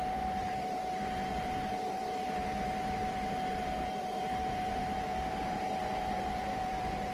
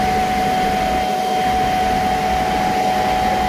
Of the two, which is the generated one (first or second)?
first